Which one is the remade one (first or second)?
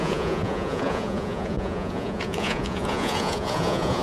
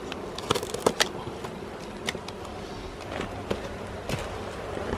first